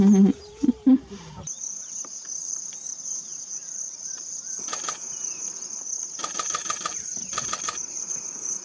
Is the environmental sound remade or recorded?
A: remade